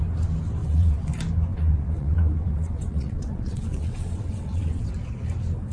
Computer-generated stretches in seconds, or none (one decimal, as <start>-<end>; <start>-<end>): 0.6-1.1; 1.5-4.9